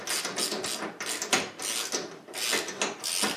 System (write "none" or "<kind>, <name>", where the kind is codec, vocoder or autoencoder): none